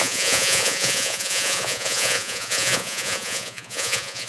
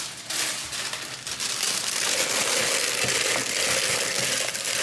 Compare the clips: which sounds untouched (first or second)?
second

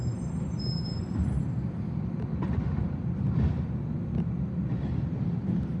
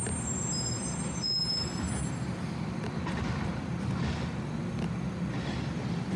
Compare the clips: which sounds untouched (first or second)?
second